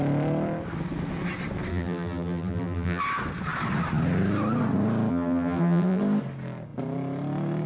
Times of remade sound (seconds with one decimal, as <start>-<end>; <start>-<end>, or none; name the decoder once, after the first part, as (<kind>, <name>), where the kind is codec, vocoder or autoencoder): 1.7-3.0 (vocoder, BigVGAN v2); 5.1-6.0